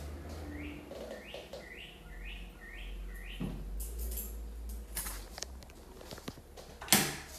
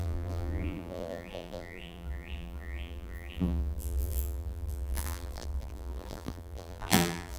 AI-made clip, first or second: second